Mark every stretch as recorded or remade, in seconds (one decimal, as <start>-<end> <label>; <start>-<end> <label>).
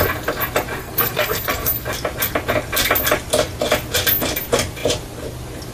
0.0-0.8 recorded; 0.8-1.8 remade; 1.8-5.7 recorded